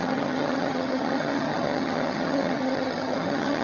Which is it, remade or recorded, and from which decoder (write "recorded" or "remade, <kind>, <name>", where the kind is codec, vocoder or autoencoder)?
remade, vocoder, HiFi-GAN